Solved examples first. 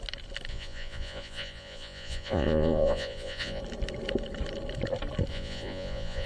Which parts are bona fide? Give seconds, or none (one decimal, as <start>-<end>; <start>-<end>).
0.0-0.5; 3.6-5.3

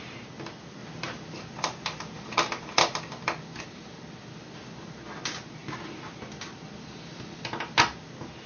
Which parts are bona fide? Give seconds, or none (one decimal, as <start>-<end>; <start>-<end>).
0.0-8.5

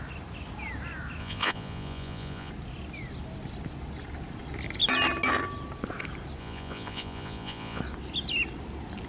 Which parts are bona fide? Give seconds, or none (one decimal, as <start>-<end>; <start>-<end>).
0.0-1.2; 2.5-6.4; 7.8-9.1